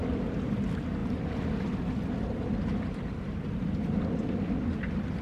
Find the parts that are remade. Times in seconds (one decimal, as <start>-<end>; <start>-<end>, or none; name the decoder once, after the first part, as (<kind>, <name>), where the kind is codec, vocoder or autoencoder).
0.0-0.6 (vocoder, BigVGAN v2); 1.0-4.1